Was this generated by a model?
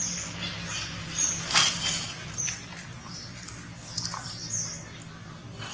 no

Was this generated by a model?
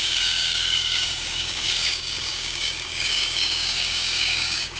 yes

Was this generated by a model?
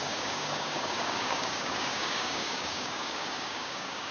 yes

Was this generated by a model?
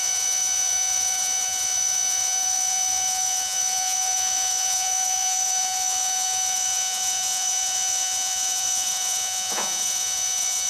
yes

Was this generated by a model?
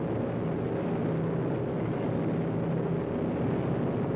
no